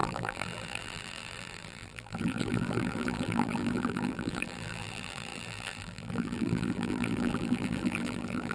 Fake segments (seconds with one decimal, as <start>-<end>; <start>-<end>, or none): 0.0-8.5